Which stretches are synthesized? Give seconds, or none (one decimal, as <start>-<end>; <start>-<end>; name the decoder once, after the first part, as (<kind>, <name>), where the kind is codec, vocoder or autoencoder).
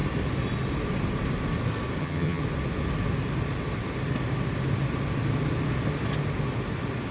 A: 2.0-2.4 (vocoder, HiFi-GAN)